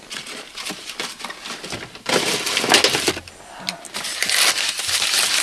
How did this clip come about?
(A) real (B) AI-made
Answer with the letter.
A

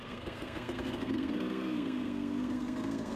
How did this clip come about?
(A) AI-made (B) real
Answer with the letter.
A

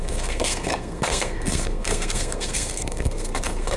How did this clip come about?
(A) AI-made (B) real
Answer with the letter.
A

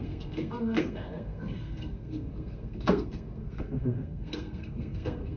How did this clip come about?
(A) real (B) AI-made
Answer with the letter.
B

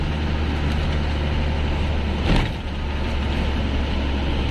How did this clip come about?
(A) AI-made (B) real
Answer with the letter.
B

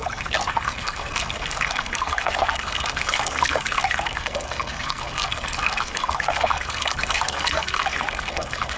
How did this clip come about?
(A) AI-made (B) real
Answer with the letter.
A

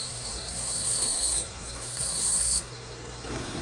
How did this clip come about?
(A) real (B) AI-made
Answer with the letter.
B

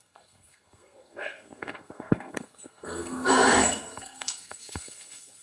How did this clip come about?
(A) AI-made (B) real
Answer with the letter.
A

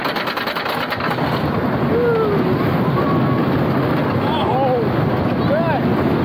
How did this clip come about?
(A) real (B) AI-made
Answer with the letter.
A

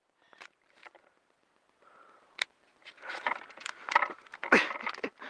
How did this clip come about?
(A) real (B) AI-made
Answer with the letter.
A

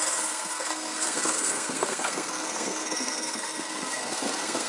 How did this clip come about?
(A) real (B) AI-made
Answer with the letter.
B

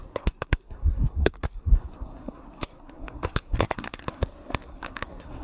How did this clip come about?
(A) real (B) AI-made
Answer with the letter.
B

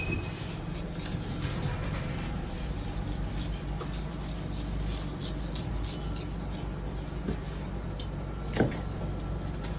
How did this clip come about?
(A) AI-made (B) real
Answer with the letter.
B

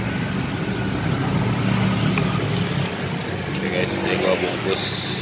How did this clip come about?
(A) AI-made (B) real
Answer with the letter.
B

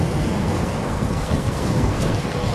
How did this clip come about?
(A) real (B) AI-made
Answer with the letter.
B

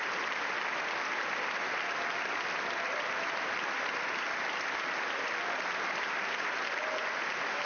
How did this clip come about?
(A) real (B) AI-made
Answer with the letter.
A